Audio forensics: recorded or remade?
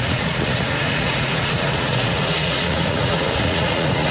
remade